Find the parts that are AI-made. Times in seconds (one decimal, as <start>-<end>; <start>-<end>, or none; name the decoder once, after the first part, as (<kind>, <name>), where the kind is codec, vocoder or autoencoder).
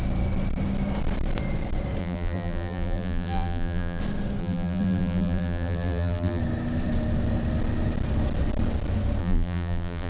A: 2.0-4.0 (vocoder, BigVGAN v2); 4.4-6.4; 9.2-10.1